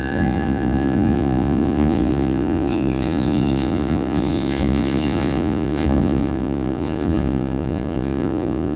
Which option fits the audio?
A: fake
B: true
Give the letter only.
A